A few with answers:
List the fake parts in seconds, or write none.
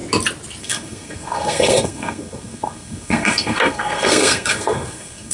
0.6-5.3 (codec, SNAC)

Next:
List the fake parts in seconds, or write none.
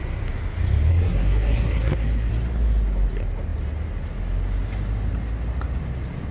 0.9-2.3 (codec, SNAC)